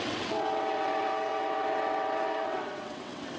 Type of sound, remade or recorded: remade